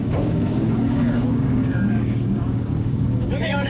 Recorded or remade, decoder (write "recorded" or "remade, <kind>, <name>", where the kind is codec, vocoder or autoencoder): remade, codec, DAC